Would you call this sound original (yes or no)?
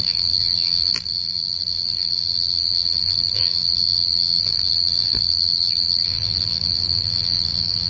no